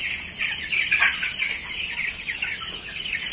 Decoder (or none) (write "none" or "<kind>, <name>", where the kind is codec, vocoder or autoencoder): none